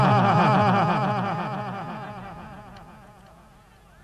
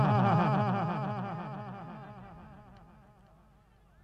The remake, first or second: first